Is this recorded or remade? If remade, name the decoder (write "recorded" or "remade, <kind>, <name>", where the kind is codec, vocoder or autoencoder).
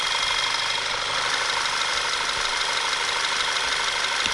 recorded